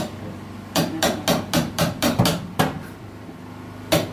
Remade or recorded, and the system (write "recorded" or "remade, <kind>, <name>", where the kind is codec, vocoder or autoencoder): recorded